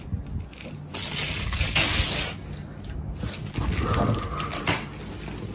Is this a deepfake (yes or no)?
no